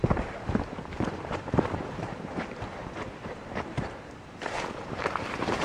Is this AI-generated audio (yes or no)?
yes